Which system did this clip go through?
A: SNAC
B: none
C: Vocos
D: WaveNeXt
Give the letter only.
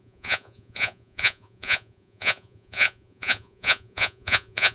C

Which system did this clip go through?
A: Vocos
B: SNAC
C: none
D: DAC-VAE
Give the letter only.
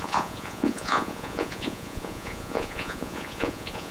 A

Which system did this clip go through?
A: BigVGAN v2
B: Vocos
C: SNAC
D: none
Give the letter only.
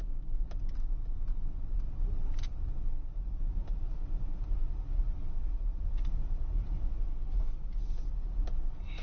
D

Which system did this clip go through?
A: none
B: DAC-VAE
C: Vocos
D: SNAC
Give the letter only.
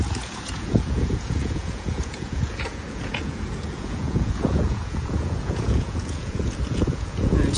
C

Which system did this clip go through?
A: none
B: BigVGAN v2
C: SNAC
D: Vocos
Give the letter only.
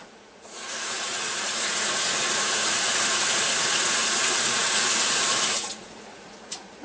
D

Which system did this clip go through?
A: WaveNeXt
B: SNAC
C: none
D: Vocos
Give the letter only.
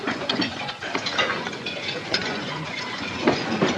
D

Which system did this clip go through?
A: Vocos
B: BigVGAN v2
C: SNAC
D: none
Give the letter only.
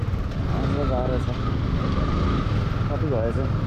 D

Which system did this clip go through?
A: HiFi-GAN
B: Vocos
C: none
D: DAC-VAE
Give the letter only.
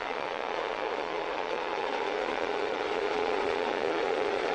B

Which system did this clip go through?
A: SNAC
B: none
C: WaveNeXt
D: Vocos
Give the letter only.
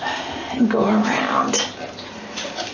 B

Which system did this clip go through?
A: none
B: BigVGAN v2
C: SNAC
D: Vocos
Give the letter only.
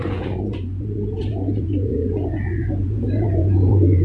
D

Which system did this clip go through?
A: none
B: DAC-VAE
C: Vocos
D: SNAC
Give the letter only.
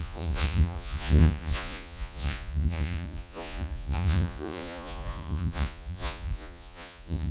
C